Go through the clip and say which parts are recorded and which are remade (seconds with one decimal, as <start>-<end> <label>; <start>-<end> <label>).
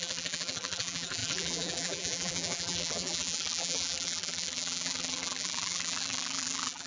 0.0-6.9 remade